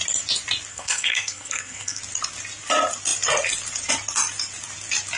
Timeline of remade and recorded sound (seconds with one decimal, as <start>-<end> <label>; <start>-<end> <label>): 0.0-0.7 recorded; 0.7-2.0 remade; 2.0-5.2 recorded